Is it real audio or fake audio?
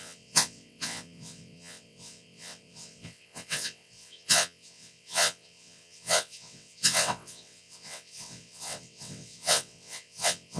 fake